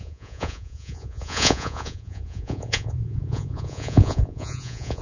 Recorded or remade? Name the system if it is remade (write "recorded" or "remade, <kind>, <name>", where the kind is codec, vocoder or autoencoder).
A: remade, vocoder, Vocos